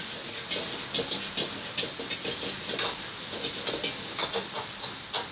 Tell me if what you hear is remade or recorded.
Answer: recorded